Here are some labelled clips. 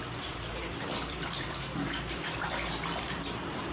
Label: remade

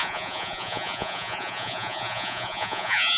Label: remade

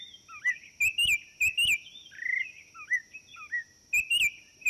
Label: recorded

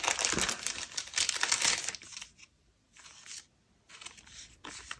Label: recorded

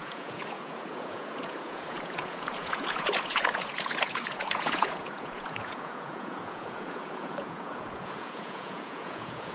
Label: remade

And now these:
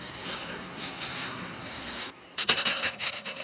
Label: remade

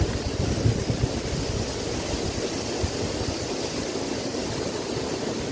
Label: recorded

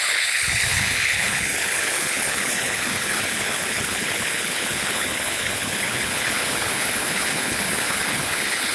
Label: remade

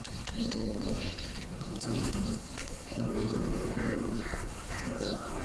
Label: remade